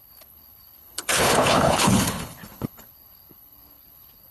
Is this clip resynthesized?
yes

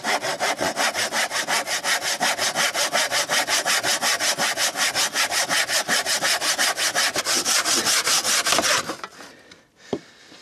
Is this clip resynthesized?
no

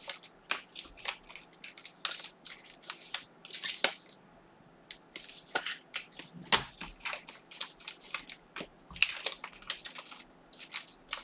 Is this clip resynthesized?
no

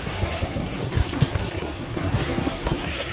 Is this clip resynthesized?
yes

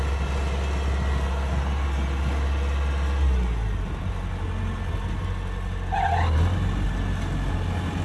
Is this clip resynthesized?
no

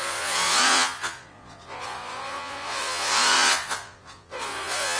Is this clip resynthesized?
yes